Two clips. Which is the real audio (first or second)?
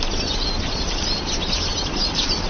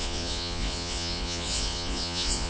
first